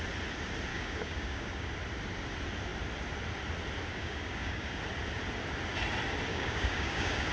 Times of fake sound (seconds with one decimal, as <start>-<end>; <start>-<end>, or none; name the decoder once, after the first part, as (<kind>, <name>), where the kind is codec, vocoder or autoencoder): 0.7-1.7 (codec, DAC); 3.9-4.8; 6.3-7.3